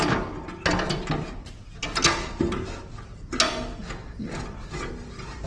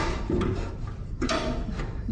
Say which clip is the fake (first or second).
second